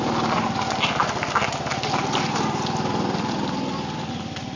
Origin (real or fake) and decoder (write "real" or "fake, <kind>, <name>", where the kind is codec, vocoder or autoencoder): real